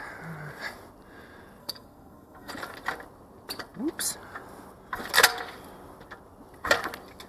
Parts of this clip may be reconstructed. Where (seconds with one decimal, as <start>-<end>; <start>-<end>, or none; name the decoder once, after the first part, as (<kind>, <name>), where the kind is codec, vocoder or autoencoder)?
1.6-2.5 (codec, SNAC)